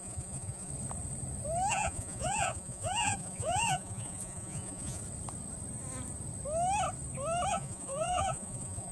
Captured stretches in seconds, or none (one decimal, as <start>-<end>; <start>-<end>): 0.7-1.7; 5.0-7.5